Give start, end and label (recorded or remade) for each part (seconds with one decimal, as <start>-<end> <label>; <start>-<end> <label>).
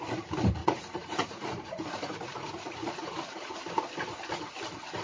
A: 0.0-0.6 recorded; 0.6-3.6 remade; 3.6-5.0 recorded